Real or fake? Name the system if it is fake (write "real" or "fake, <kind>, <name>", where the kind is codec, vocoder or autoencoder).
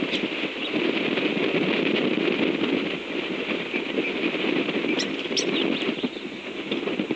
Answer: real